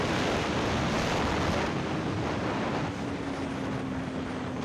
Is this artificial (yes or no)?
no